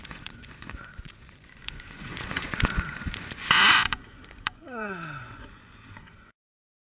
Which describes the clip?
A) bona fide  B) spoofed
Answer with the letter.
B